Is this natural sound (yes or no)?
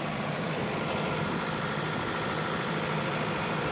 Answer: yes